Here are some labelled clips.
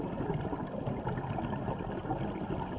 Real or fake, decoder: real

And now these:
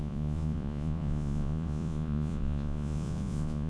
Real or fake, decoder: fake, vocoder, Vocos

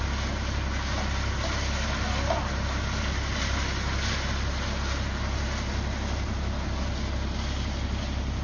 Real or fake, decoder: real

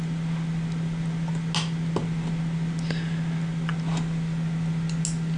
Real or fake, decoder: real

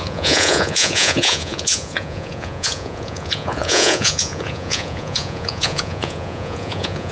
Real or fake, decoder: fake, vocoder, Vocos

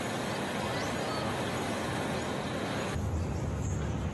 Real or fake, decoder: real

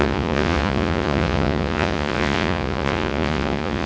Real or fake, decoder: fake, vocoder, Vocos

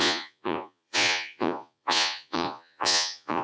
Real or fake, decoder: fake, vocoder, Vocos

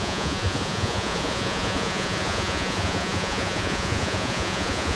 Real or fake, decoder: fake, vocoder, Vocos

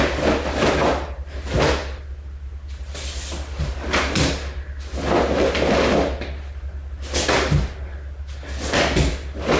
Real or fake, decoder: real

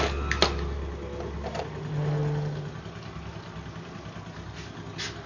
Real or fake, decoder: real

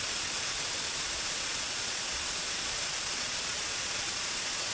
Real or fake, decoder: fake, vocoder, Vocos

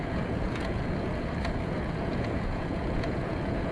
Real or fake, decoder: fake, vocoder, Vocos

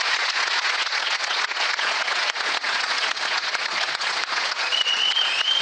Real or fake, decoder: fake, vocoder, Vocos